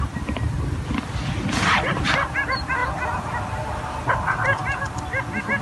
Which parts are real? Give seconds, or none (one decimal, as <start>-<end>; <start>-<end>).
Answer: 0.0-5.6